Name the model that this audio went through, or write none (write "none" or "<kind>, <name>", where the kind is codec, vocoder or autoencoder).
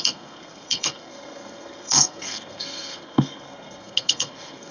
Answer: codec, SNAC